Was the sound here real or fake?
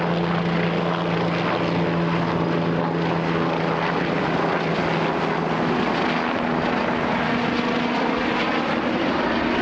real